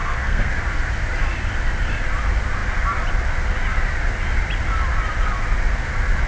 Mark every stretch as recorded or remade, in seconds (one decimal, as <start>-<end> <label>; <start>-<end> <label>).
0.0-0.5 remade; 0.5-6.3 recorded